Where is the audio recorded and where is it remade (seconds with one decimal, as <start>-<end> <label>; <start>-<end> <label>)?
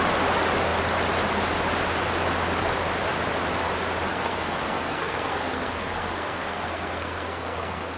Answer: 0.0-4.1 recorded; 4.1-8.0 remade